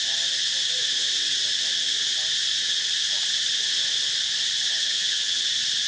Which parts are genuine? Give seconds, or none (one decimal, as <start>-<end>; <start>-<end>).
0.0-4.7; 5.4-5.9